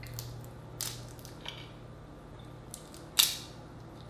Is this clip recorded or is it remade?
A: recorded